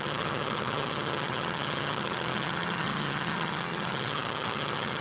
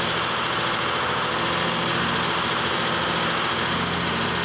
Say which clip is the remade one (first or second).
first